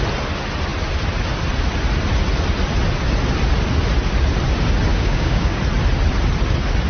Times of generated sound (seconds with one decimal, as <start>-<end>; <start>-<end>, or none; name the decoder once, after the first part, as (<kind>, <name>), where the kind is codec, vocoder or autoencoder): 4.9-5.6 (codec, DAC)